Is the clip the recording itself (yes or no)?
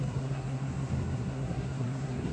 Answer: no